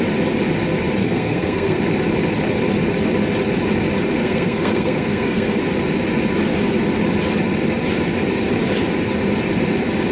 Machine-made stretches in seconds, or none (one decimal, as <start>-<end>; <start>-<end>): 1.0-1.8; 4.2-5.6